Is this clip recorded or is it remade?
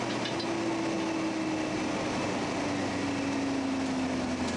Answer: recorded